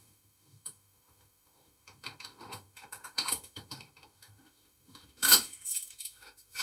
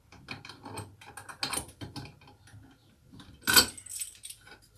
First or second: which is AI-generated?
first